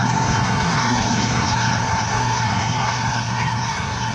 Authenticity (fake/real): fake